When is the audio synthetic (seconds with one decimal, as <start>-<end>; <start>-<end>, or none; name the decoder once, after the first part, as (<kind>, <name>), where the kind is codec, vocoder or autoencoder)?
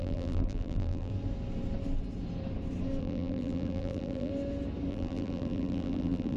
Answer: 0.0-1.1 (vocoder, BigVGAN v2); 3.0-4.3; 4.9-6.4